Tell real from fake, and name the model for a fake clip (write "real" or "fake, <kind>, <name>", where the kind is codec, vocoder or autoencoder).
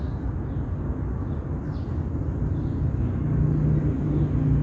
real